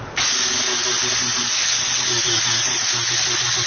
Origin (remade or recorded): recorded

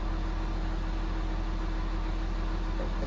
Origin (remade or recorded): recorded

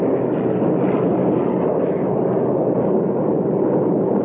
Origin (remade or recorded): recorded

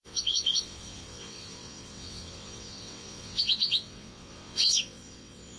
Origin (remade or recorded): remade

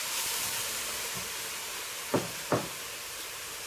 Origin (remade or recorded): remade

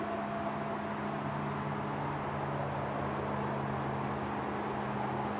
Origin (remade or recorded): recorded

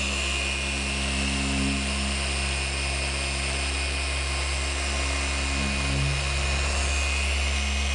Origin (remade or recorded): recorded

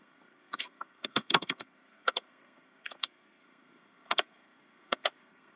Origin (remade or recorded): remade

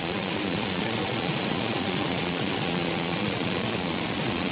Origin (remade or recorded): remade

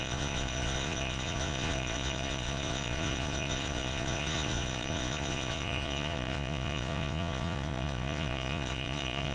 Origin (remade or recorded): remade